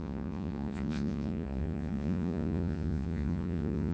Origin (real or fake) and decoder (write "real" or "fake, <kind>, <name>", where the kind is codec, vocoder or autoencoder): fake, vocoder, Vocos